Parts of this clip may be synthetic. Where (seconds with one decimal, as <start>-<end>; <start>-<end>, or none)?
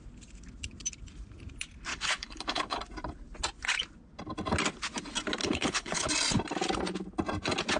1.9-2.8; 5.4-6.1